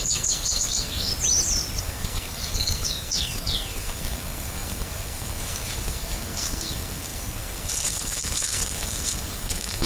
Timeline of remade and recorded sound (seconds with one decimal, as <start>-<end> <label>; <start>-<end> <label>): 0.0-1.1 remade; 1.1-1.8 recorded; 1.8-9.9 remade

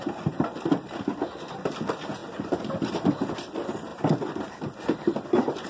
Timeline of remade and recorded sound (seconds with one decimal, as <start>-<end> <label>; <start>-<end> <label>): 0.0-5.7 recorded